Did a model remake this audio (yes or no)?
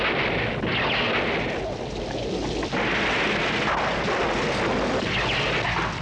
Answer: no